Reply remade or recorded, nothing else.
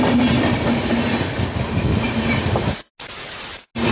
recorded